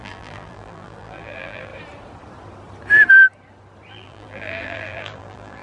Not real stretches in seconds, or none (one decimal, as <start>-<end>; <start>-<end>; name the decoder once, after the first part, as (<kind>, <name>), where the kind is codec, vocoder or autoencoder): 0.0-1.7 (vocoder, BigVGAN v2); 3.9-5.6